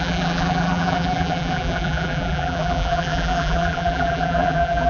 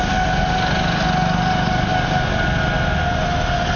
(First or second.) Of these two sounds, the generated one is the first